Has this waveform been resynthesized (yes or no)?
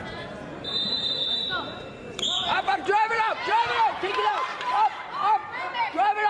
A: yes